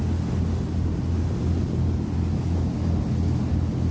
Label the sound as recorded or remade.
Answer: recorded